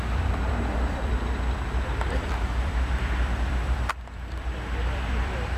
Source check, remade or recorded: remade